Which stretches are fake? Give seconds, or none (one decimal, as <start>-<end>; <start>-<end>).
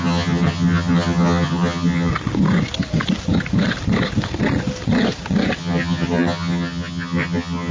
0.0-2.1; 5.6-7.7